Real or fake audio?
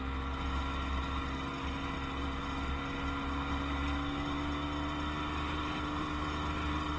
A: real